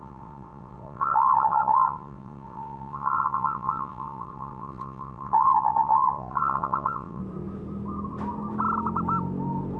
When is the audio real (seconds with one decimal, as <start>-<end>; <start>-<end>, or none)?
7.2-9.8